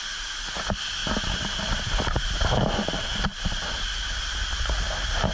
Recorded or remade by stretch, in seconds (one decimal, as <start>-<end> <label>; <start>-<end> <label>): 0.0-5.3 recorded